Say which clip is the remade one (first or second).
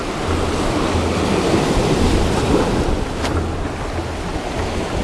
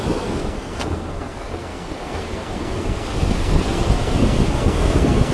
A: second